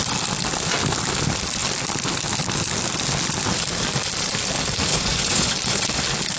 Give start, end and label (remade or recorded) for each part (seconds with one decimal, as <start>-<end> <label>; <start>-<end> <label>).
0.0-4.9 recorded; 4.9-6.0 remade; 6.0-6.4 recorded